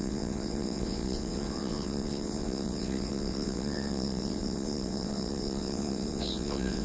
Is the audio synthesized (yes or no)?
yes